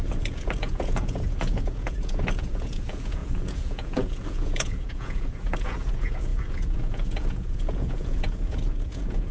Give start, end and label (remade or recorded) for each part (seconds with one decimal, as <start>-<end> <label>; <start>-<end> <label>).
0.0-9.3 remade